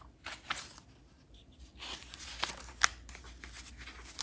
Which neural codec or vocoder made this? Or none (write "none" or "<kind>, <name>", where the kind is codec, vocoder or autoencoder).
none